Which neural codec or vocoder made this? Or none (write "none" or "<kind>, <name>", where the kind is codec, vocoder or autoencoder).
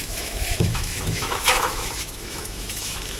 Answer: autoencoder, DAC-VAE